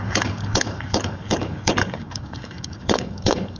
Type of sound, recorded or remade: remade